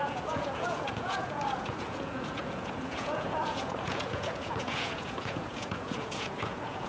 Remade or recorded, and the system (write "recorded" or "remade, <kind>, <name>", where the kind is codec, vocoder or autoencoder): remade, vocoder, Vocos